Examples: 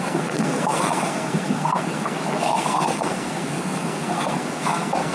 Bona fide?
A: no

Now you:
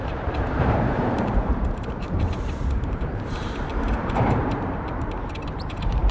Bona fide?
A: no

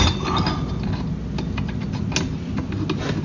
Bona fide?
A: yes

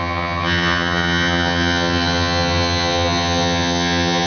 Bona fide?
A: no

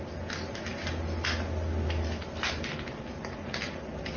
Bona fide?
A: yes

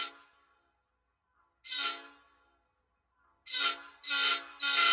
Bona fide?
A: yes